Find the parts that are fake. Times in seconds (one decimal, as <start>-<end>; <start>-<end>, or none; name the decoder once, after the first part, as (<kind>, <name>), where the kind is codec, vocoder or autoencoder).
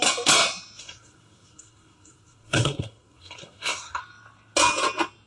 0.8-4.0 (codec, SNAC)